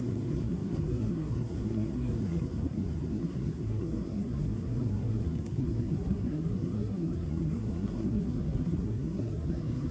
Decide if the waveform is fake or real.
fake